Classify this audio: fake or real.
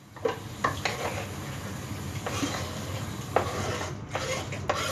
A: real